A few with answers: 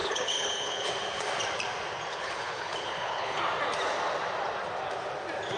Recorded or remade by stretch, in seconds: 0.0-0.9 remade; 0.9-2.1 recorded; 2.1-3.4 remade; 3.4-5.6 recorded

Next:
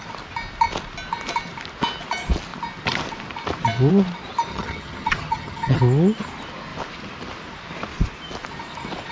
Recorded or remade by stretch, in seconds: 0.0-4.5 recorded; 4.5-5.8 remade; 5.8-9.1 recorded

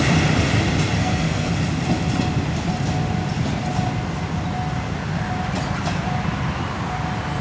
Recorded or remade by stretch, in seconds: 0.0-1.0 recorded; 1.0-1.5 remade; 1.5-7.4 recorded

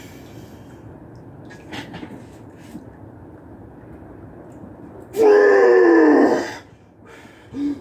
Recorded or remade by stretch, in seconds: 0.0-7.8 recorded

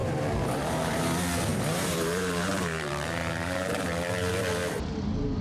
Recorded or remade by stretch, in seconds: 0.0-1.0 remade; 1.0-1.5 recorded; 1.5-3.7 remade; 3.7-5.4 recorded

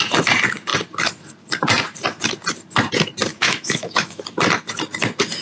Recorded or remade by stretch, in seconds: 0.0-3.3 recorded; 3.3-4.2 remade; 4.2-5.4 recorded

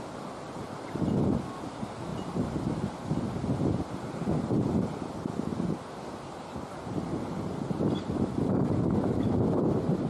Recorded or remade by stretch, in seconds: 0.0-2.1 remade; 2.1-3.2 recorded; 3.2-5.5 remade; 5.5-7.1 recorded; 7.1-10.1 remade